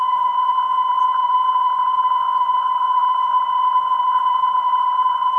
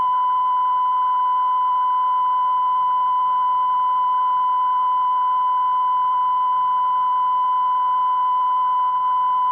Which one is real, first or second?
second